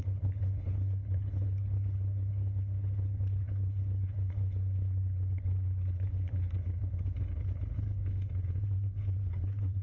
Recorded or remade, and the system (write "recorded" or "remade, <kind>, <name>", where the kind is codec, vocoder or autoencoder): remade, codec, HILCodec